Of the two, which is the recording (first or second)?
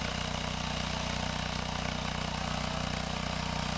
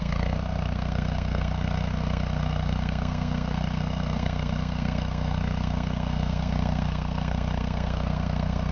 first